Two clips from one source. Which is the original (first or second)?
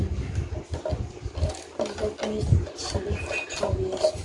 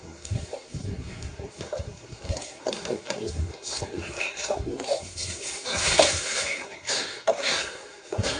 first